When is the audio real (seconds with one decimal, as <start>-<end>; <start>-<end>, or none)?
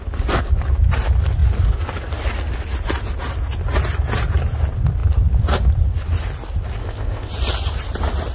0.0-6.8; 7.3-8.3